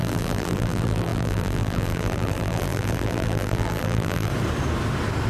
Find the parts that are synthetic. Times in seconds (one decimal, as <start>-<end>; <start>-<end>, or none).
0.0-4.3